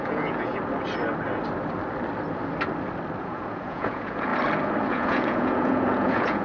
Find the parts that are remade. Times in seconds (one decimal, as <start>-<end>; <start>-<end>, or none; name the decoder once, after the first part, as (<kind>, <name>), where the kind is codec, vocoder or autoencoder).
0.0-0.5 (vocoder, Vocos); 3.2-4.3; 4.9-6.4